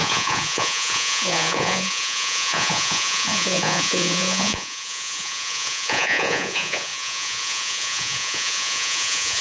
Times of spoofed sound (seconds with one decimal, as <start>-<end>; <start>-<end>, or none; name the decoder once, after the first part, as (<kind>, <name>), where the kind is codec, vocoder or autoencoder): 0.0-9.4 (vocoder, Vocos)